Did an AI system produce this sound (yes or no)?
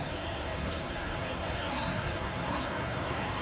yes